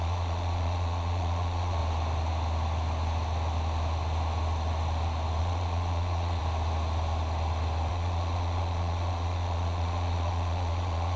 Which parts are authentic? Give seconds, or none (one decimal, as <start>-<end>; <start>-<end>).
1.8-5.4; 6.4-7.9